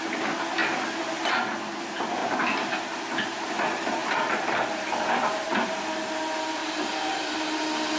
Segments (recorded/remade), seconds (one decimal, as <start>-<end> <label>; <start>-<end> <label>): 0.0-4.0 recorded; 4.0-5.8 remade; 5.8-6.6 recorded; 6.6-7.3 remade; 7.3-8.0 recorded